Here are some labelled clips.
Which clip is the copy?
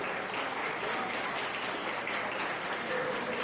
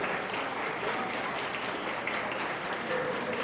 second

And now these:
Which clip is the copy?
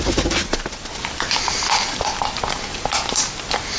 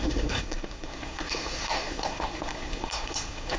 second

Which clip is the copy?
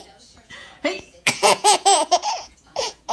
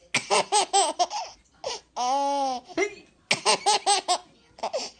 first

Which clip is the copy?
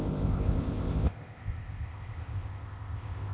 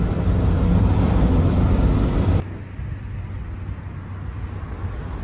first